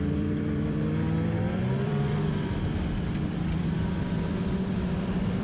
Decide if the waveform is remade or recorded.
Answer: remade